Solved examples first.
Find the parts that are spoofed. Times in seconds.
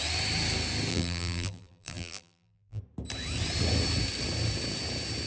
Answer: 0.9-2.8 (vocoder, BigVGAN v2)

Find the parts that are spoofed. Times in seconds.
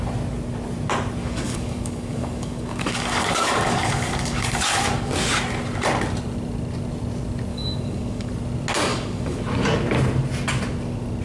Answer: 1.2-5.1 (codec, DAC); 7.5-8.3; 8.9-9.4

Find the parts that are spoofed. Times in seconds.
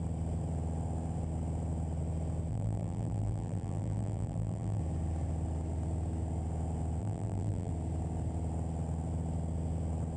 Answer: 2.5-4.8 (vocoder, BigVGAN v2); 7.0-7.7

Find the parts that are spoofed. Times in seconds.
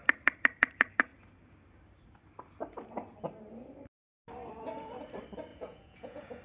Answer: 5.5-6.4 (vocoder, Vocos)